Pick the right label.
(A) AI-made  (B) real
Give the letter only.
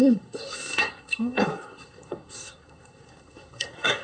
A